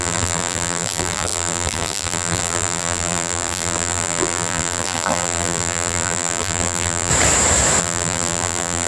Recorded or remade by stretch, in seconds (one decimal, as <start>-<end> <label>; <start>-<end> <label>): 0.0-7.1 remade; 7.1-7.8 recorded; 7.8-8.9 remade